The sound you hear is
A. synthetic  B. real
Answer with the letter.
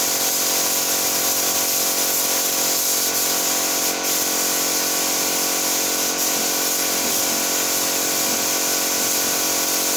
B